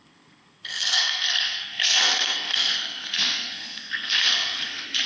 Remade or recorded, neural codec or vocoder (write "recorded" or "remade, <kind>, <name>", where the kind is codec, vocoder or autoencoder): remade, codec, SNAC